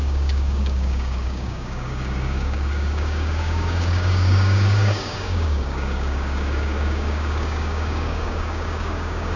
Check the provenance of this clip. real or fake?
fake